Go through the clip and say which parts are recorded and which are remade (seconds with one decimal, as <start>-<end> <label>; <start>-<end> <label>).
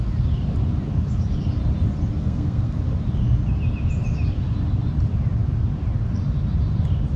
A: 0.0-2.2 recorded; 2.2-2.8 remade; 2.8-7.2 recorded